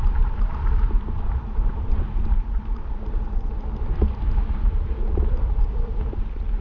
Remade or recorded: remade